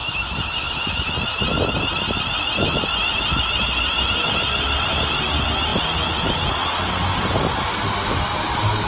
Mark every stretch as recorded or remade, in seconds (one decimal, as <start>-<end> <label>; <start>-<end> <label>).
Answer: 0.0-1.1 remade; 1.1-8.9 recorded